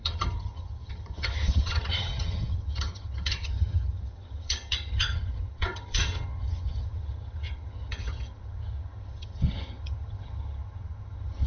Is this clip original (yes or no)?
no